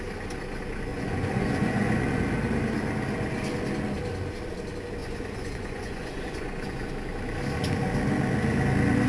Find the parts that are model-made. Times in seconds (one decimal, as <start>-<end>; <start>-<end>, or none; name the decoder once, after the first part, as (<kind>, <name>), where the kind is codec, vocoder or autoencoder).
0.9-2.2 (vocoder, Vocos); 5.0-6.9